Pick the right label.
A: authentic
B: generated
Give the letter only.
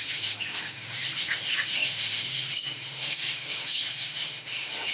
B